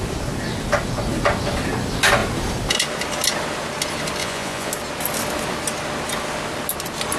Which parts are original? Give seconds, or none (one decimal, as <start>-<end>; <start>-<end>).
0.0-4.2; 4.7-7.2